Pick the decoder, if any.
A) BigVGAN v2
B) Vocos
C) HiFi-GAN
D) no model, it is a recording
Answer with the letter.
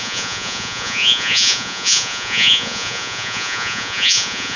B